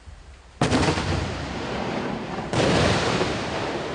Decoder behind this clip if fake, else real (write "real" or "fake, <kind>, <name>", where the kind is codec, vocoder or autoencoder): fake, vocoder, BigVGAN v2